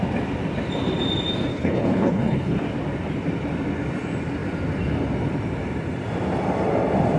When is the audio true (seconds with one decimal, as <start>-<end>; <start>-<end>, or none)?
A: 0.0-1.5; 2.6-7.2